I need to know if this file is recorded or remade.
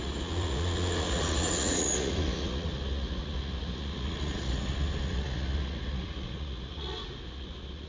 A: remade